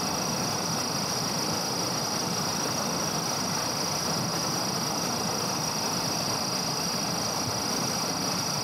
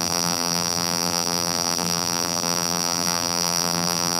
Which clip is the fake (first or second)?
second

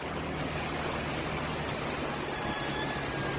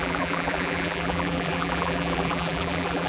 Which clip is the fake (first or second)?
second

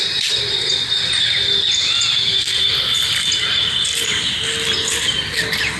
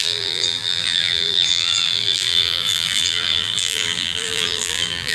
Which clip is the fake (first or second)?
second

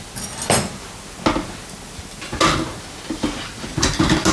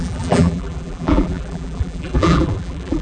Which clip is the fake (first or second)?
second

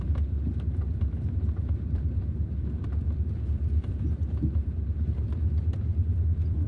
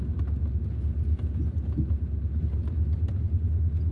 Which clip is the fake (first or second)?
first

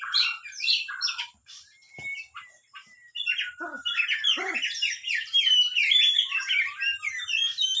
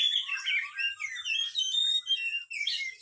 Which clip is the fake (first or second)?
first